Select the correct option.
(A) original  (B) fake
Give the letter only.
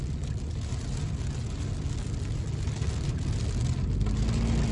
A